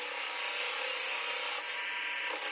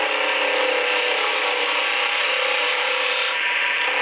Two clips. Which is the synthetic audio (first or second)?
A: second